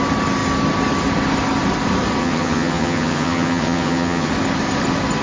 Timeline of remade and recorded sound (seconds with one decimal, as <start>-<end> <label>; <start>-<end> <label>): 0.0-2.2 recorded; 2.2-4.3 remade; 4.3-5.2 recorded